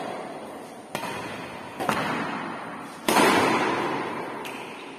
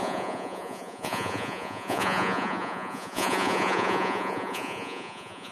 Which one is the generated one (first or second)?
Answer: second